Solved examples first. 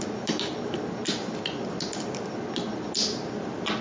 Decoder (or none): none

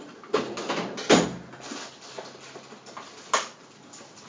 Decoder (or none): none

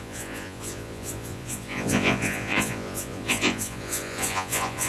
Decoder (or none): vocoder, Vocos